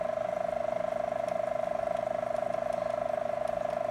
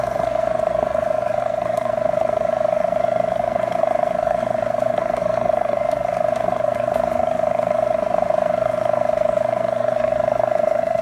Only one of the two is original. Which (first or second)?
first